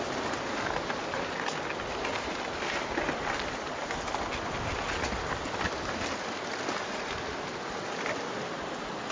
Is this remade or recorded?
recorded